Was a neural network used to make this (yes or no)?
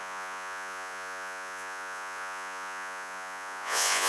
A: yes